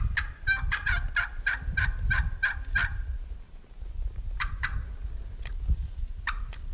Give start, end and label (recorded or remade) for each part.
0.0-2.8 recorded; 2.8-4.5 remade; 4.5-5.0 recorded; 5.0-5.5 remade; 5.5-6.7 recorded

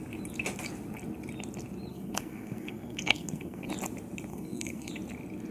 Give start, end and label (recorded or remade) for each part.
0.0-1.9 recorded; 1.9-3.7 remade; 3.7-4.3 recorded; 4.3-4.9 remade; 4.9-5.5 recorded